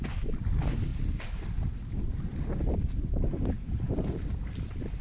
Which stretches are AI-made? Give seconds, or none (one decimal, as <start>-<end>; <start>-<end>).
none